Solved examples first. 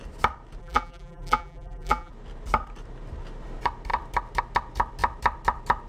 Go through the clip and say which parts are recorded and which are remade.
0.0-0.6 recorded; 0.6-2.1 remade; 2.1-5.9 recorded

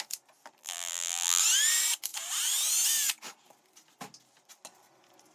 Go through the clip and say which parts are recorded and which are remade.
0.0-0.6 recorded; 0.6-1.4 remade; 1.4-5.3 recorded